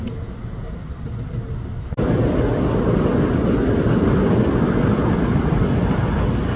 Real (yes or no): yes